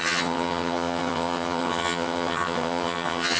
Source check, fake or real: fake